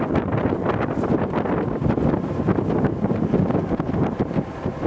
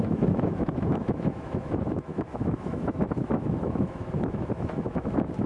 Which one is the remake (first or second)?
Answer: second